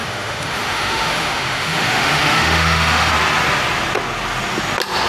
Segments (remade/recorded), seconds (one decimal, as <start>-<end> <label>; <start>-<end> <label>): 0.0-3.1 remade; 3.1-5.1 recorded